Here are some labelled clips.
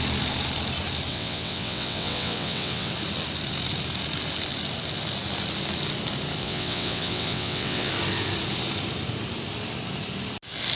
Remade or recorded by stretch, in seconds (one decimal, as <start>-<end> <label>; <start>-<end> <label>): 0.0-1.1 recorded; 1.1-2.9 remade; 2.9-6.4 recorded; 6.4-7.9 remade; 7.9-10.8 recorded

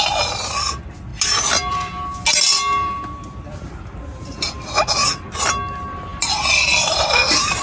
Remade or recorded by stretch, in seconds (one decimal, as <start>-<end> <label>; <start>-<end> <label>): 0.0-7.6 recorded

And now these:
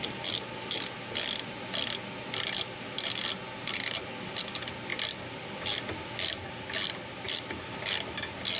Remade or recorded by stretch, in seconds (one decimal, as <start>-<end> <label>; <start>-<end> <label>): 0.0-8.6 recorded

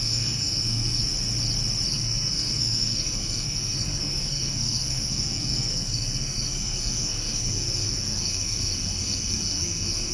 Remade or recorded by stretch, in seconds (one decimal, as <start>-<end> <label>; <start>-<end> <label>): 0.0-1.0 remade; 1.0-1.9 recorded; 1.9-10.1 remade